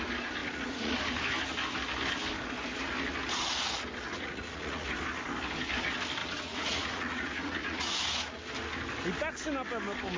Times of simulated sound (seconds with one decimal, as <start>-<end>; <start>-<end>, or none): 0.4-1.0; 4.1-4.9; 6.2-7.9